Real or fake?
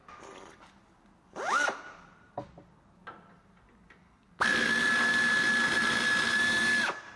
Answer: real